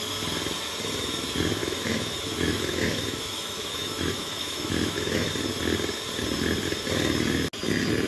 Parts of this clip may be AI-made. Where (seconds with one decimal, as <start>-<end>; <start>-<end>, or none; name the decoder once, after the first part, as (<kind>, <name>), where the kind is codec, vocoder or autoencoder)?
1.6-5.3 (autoencoder, DAC-VAE)